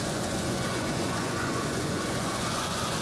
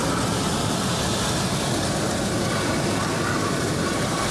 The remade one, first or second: first